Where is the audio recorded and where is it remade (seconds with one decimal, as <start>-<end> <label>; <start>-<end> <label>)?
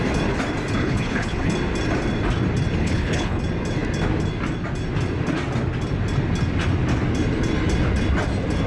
0.0-0.8 recorded; 0.8-1.5 remade; 1.5-2.8 recorded; 2.8-3.4 remade; 3.4-8.7 recorded